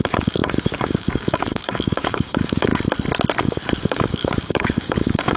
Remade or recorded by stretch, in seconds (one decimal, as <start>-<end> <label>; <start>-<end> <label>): 0.0-2.7 remade; 2.7-3.4 recorded; 3.4-5.4 remade